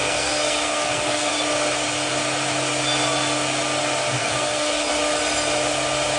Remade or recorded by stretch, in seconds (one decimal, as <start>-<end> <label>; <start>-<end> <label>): 0.0-1.3 remade; 1.3-4.2 recorded; 4.2-4.9 remade; 4.9-6.2 recorded